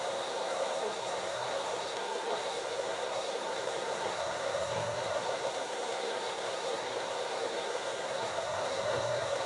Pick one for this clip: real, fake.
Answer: fake